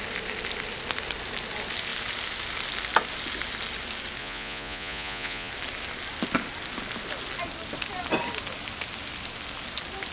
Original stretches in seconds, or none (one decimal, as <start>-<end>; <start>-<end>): 0.0-4.2; 5.5-10.1